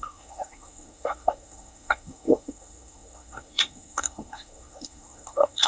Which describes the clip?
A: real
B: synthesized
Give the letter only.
B